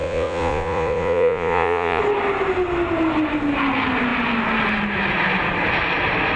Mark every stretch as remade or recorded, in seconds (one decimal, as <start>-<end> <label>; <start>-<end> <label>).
0.0-2.0 remade; 2.0-6.4 recorded